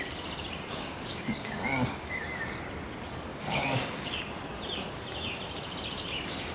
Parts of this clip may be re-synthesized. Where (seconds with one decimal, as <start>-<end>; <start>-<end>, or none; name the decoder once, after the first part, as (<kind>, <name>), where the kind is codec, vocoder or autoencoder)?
0.7-2.2 (codec, DAC); 3.3-4.2